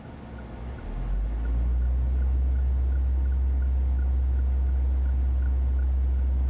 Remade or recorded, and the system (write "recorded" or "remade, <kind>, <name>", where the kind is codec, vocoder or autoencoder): recorded